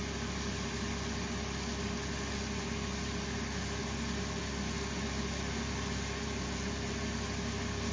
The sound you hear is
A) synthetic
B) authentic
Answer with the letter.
B